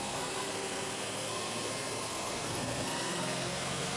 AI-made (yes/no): yes